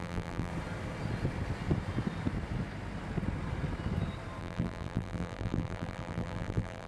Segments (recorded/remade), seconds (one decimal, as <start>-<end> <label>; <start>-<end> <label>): 0.0-0.5 remade; 0.5-4.4 recorded; 4.4-6.9 remade